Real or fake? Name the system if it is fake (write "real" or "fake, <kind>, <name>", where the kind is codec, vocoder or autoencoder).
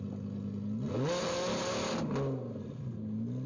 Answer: real